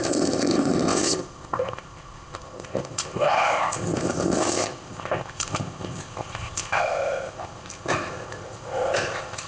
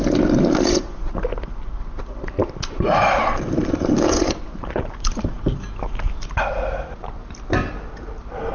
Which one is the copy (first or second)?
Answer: first